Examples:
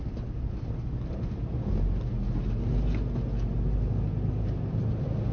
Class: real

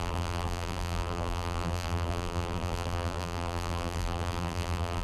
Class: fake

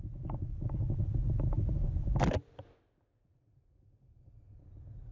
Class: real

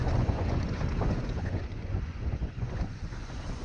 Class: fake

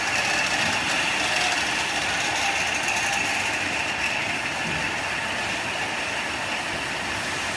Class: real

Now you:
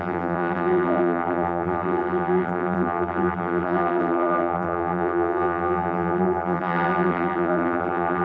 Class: fake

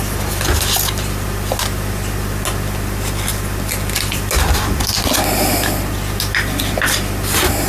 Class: real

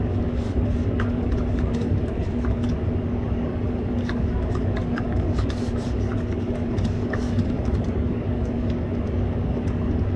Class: fake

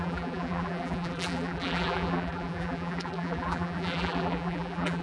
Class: fake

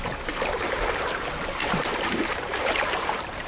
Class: fake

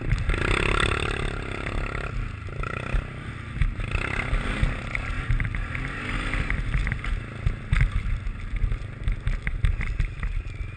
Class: real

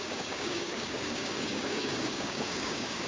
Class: fake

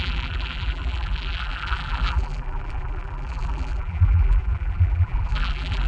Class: fake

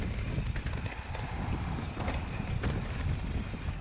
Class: real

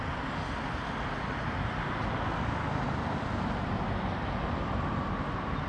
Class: real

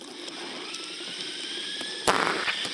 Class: real